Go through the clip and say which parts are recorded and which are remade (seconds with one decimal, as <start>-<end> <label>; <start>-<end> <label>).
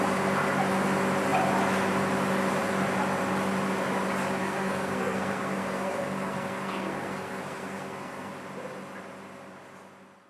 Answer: 0.0-4.4 recorded; 4.4-8.3 remade; 8.3-10.3 recorded